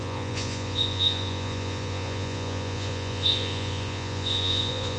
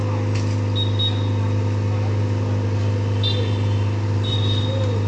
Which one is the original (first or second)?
second